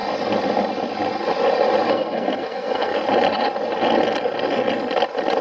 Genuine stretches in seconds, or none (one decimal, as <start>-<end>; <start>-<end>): 0.0-1.9; 2.9-5.4